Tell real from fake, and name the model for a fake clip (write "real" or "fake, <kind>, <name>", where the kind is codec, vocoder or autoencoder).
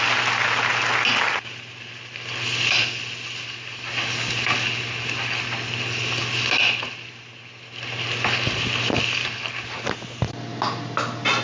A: real